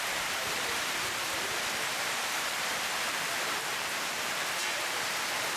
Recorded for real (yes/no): no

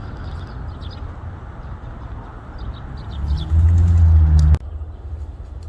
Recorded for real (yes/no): yes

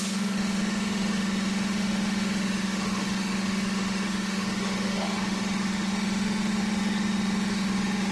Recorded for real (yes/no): no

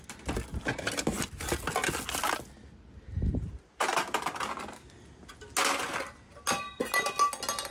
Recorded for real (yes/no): yes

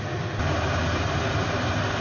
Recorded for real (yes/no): yes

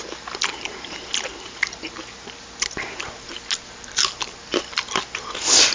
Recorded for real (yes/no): yes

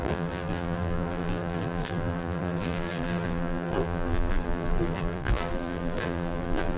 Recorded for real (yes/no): no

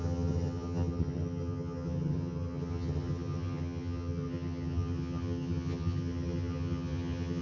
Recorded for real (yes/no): no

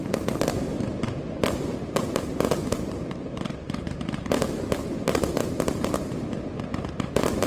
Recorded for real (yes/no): no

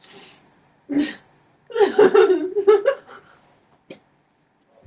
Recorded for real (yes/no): yes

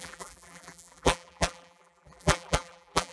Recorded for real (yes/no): no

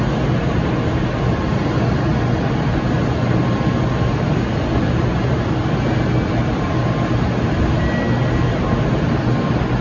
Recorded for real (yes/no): yes